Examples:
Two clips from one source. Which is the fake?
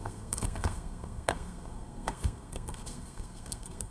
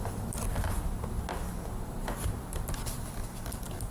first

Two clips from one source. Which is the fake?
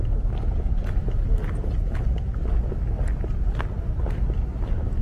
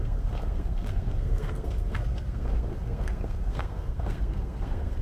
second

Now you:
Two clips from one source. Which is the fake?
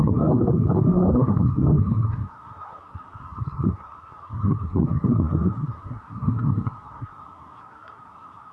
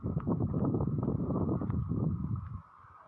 first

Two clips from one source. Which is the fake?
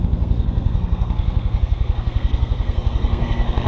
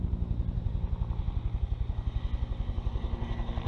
first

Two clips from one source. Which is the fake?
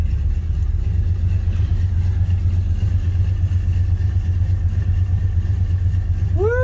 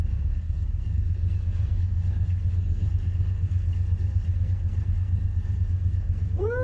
second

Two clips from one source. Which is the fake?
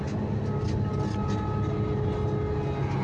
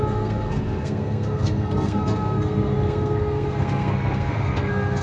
second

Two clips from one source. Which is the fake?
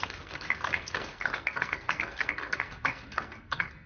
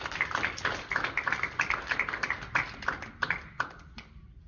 first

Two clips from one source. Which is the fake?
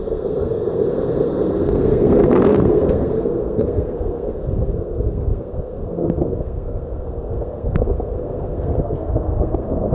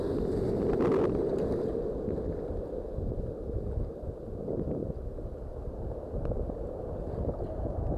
first